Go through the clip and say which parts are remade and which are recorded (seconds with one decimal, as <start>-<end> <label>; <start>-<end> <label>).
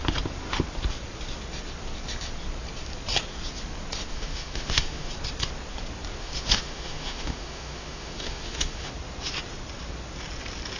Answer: 0.0-4.1 recorded; 4.1-5.1 remade; 5.1-6.2 recorded; 6.2-8.9 remade; 8.9-10.8 recorded